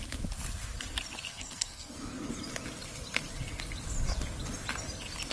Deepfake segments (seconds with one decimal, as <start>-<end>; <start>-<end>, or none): 1.3-2.3